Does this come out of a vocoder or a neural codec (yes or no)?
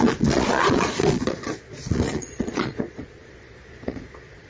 yes